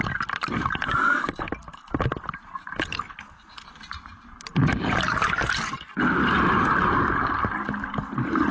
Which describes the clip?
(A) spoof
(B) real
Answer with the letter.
B